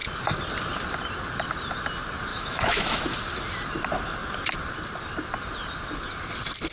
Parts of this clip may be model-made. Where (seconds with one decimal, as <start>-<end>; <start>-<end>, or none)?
2.3-3.0